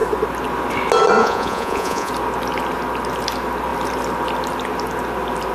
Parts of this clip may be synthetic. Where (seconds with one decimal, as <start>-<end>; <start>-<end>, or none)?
1.2-2.1